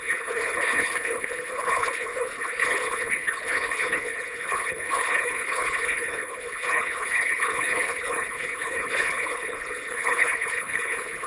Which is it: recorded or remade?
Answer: remade